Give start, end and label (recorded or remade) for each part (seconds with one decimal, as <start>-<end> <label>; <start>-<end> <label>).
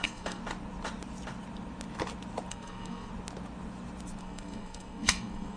0.0-0.4 remade; 0.4-2.5 recorded; 2.5-3.1 remade; 3.1-4.2 recorded; 4.2-5.6 remade